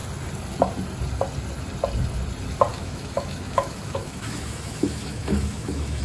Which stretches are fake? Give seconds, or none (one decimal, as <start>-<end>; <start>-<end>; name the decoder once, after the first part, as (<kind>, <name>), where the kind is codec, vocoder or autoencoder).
2.7-6.0 (autoencoder, DAC-VAE)